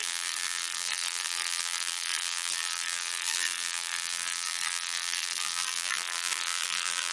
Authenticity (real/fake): fake